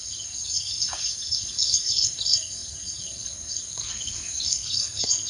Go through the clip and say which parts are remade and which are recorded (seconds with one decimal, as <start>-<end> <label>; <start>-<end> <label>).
0.0-5.3 remade